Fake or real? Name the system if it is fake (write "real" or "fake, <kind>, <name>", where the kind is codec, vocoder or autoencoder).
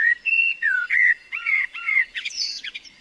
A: fake, vocoder, Vocos